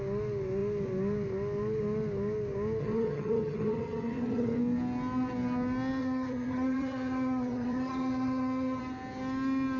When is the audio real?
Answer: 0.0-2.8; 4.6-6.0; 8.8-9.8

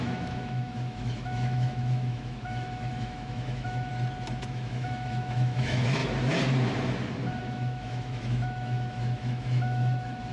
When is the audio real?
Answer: 3.9-4.4; 6.0-7.4

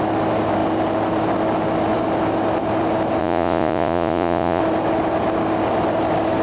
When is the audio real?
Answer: 0.0-3.2; 4.6-6.4

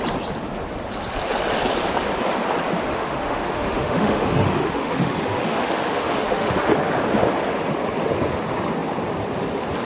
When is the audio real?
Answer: 0.0-2.9; 6.7-9.9

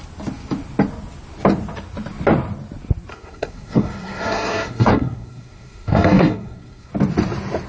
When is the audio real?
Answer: 0.0-3.1; 6.9-7.7

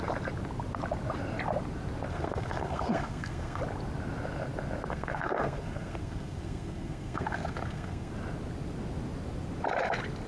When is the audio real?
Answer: 0.0-2.1; 3.6-4.9; 8.1-10.3